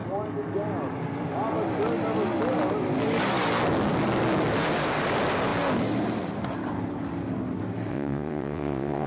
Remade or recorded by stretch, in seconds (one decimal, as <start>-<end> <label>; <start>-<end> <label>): 0.0-7.9 recorded; 7.9-9.1 remade